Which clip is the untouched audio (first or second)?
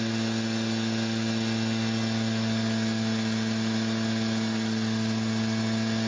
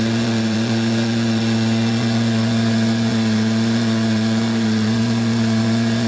first